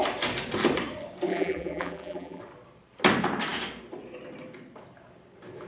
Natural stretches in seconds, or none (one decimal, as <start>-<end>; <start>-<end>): 0.0-1.3; 2.4-5.7

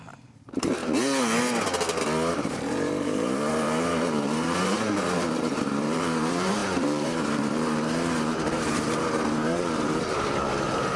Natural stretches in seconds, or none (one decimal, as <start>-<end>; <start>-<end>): 0.8-2.3

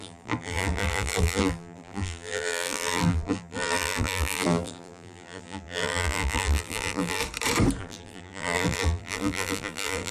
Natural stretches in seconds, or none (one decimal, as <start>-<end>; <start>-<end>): 7.2-7.8

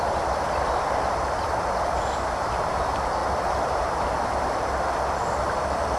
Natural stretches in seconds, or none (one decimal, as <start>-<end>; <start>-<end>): none

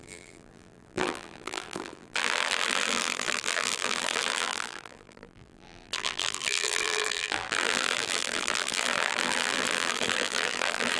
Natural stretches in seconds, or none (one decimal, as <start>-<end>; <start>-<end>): none

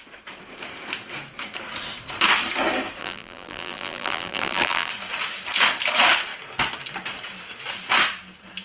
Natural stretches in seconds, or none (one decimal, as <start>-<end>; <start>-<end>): 0.0-3.0; 4.9-8.6

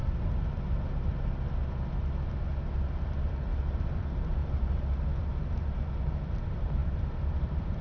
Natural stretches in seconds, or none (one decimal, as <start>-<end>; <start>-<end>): 0.0-3.0; 3.5-4.0